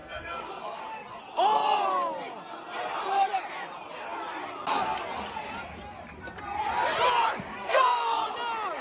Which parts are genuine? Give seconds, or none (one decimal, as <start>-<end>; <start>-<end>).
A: 0.8-7.5; 8.3-8.8